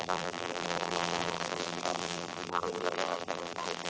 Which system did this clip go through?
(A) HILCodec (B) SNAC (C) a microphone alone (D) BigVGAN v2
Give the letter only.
D